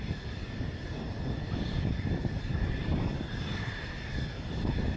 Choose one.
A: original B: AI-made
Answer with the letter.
A